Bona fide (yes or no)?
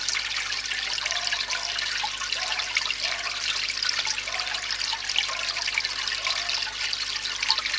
yes